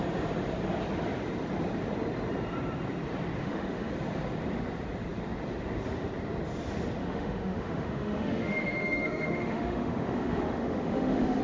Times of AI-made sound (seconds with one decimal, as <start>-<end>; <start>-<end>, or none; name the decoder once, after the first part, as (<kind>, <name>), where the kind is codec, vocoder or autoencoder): 3.4-3.9 (autoencoder, DAC-VAE); 7.0-11.4